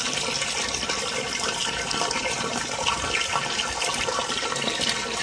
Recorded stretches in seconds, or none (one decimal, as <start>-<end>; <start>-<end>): 0.0-5.2